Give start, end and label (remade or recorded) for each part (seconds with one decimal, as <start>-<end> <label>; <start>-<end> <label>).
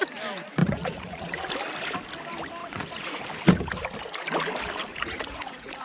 0.0-0.6 recorded; 0.6-1.5 remade; 1.5-2.6 recorded; 2.6-3.2 remade; 3.2-4.9 recorded; 4.9-5.8 remade